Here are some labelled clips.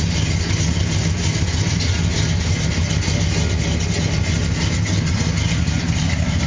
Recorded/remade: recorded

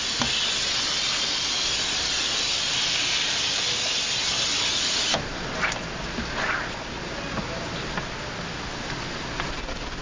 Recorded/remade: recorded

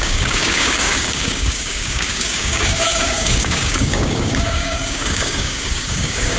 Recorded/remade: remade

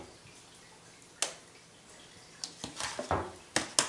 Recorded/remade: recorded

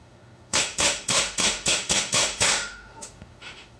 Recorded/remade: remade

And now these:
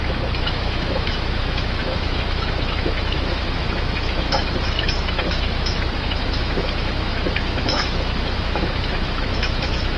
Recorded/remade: remade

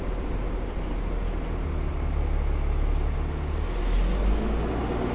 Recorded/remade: recorded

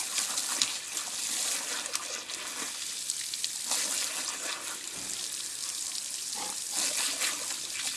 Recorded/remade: recorded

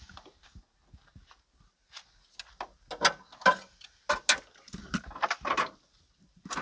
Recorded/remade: recorded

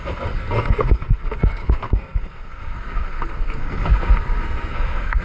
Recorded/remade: remade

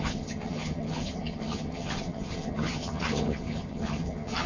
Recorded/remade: remade